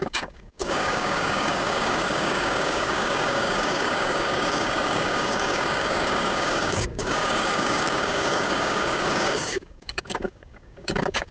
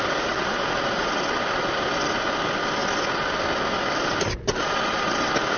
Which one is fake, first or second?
first